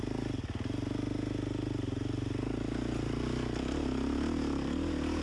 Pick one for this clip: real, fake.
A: real